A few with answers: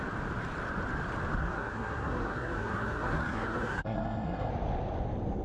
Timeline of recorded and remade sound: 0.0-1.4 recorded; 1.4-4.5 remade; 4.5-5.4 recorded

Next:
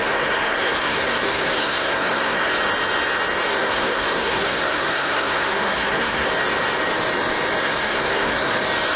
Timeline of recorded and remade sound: 0.0-2.5 remade; 2.5-3.5 recorded; 3.5-6.3 remade; 6.3-7.6 recorded; 7.6-8.5 remade; 8.5-9.0 recorded

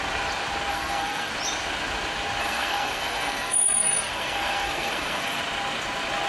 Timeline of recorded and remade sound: 0.0-0.7 recorded; 0.7-1.3 remade; 1.3-2.4 recorded; 2.4-5.4 remade; 5.4-6.3 recorded

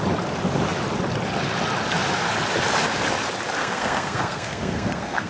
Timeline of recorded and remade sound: 0.0-3.6 recorded; 3.6-5.3 remade

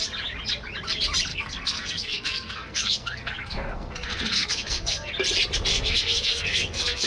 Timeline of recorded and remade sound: 0.0-1.3 recorded; 1.3-5.1 remade; 5.1-5.7 recorded; 5.7-7.1 remade

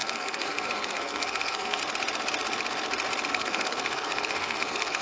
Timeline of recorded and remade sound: 0.0-1.8 remade; 1.8-3.3 recorded; 3.3-5.0 remade